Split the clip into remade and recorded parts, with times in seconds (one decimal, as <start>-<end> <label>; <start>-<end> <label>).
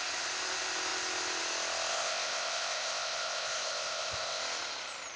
0.0-1.9 recorded; 1.9-4.4 remade; 4.4-5.2 recorded